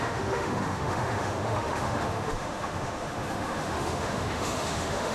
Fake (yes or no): yes